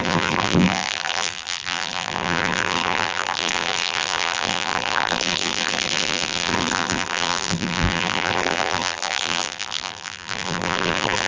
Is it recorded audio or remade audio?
remade